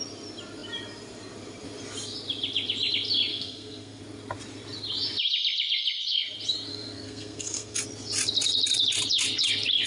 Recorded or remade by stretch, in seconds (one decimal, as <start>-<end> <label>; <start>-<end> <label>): 0.0-3.3 recorded; 3.3-4.0 remade; 4.0-6.7 recorded; 6.7-7.8 remade; 7.8-9.9 recorded